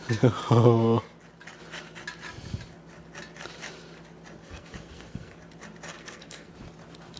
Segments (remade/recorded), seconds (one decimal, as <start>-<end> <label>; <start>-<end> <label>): 0.0-4.4 recorded; 4.4-5.4 remade; 5.4-5.9 recorded; 5.9-6.5 remade; 6.5-7.2 recorded